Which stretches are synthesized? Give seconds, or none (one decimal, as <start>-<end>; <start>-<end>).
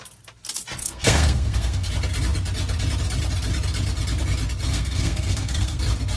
0.8-1.9; 4.7-5.8